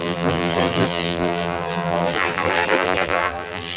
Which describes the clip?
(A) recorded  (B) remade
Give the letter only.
B